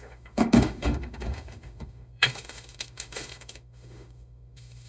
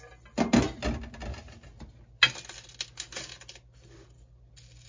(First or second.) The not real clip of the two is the first